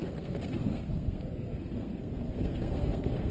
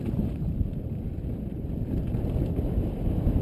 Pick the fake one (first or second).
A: first